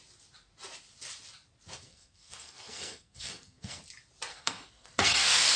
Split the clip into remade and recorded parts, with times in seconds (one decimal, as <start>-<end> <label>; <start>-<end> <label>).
0.0-1.8 recorded; 1.8-3.8 remade; 3.8-4.3 recorded; 4.3-5.6 remade